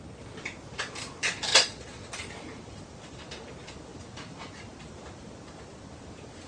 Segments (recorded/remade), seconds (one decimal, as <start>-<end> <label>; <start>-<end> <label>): 0.0-1.5 recorded; 1.5-2.1 remade; 2.1-6.5 recorded